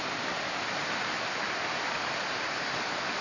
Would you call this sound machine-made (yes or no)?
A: no